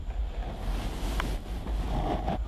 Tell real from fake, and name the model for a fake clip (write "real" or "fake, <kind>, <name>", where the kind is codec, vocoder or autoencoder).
real